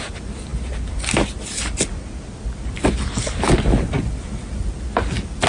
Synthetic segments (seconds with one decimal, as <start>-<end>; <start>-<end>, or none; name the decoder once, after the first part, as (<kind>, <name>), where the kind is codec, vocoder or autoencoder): none